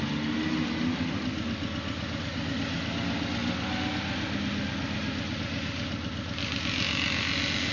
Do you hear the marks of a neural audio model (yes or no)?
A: no